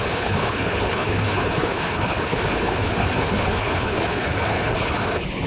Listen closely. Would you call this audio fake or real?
fake